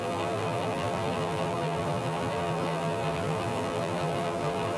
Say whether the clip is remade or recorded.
remade